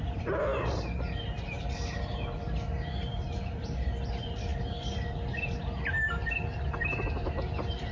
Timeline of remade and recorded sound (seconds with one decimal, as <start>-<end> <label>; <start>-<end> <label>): 0.0-7.9 recorded